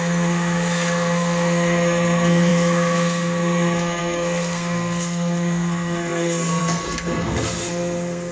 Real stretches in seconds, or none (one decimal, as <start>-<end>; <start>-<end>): none